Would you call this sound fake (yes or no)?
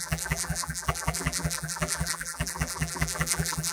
yes